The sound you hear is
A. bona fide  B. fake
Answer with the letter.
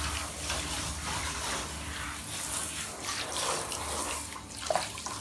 A